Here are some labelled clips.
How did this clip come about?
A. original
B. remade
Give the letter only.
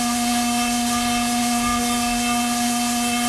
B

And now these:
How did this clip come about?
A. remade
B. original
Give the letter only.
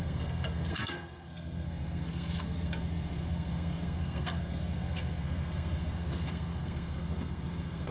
A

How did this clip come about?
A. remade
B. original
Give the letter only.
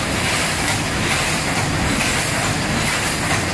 B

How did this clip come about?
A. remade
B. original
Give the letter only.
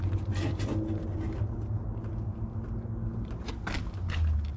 B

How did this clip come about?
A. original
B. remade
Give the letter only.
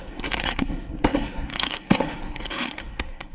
B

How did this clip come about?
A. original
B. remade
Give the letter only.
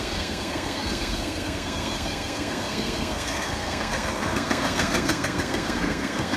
B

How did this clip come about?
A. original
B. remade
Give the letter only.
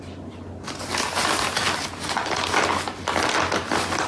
A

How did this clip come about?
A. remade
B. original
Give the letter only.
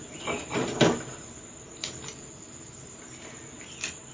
B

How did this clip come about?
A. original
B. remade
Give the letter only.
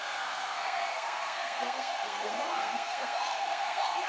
B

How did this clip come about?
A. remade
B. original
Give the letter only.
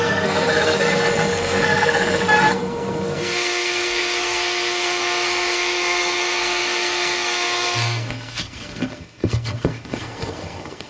A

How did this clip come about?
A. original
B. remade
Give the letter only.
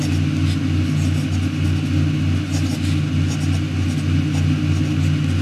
A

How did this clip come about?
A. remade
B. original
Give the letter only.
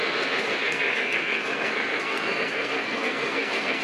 A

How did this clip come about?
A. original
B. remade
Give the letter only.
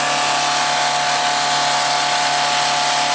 A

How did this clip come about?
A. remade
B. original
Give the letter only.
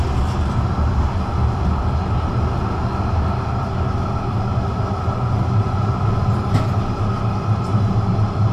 B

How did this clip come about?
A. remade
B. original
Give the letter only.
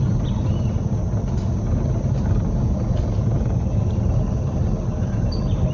B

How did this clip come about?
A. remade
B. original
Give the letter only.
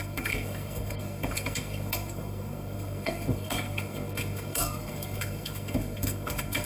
A